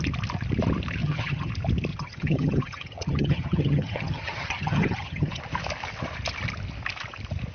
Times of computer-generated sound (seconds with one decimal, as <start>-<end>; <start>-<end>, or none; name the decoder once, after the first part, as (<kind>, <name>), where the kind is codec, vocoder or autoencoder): 1.0-1.5 (vocoder, HiFi-GAN); 1.9-5.4